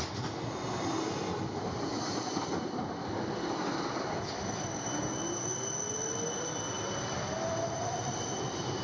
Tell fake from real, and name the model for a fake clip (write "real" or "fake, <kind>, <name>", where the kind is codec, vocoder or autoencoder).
real